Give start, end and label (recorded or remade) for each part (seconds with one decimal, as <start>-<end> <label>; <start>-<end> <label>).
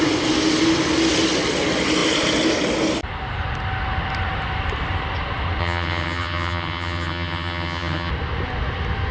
0.0-5.6 recorded; 5.6-8.1 remade; 8.1-9.1 recorded